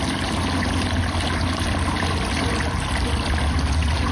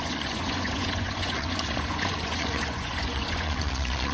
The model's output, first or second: second